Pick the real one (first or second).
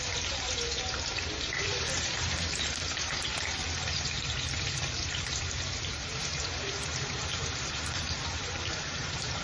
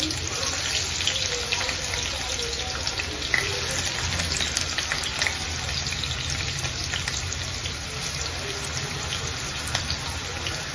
second